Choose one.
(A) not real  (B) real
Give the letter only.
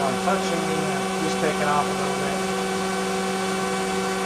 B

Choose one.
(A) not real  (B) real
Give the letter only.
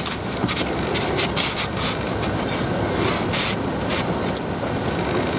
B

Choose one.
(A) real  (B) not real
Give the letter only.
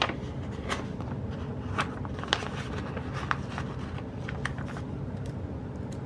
A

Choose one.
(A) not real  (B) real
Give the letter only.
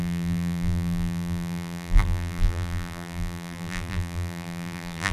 A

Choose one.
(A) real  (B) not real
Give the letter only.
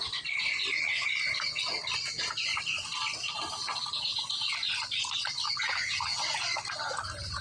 A